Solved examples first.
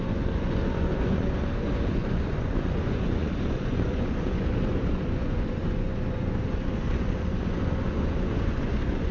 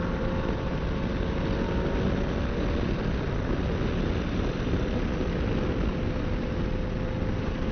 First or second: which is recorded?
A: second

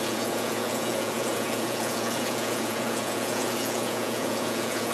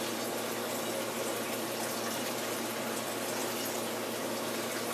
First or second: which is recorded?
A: second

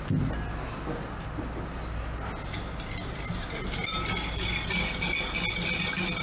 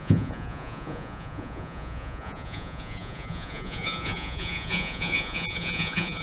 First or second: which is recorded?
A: first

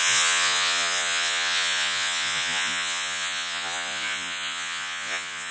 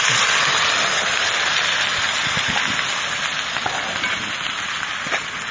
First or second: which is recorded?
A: second